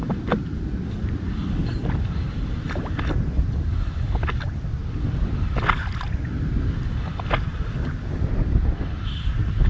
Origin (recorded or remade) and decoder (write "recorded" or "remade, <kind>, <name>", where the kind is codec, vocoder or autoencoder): recorded